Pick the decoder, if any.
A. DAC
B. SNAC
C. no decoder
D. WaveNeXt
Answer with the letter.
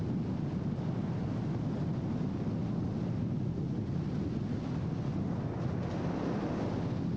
C